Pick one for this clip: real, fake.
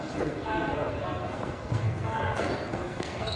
fake